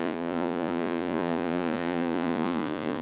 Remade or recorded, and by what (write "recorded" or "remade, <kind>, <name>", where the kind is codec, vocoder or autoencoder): remade, vocoder, Vocos